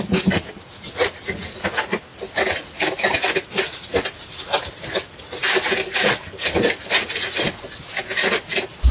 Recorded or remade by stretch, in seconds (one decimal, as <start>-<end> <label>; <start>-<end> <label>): 0.0-8.9 remade